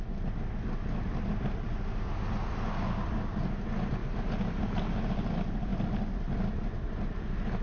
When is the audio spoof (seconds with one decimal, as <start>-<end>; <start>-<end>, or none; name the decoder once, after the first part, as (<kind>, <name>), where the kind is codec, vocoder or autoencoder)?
none